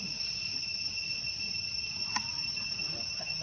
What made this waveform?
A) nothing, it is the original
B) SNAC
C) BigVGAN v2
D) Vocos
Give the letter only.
A